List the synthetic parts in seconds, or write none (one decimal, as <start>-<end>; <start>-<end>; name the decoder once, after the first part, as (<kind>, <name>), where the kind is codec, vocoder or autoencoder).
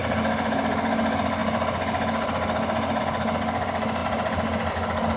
none